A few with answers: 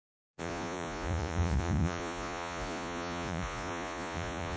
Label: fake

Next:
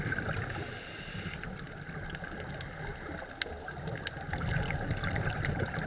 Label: real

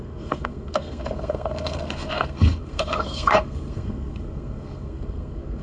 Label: fake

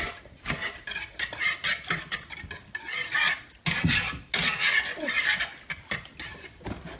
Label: real